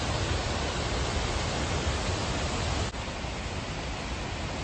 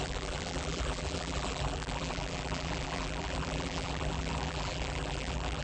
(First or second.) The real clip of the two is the first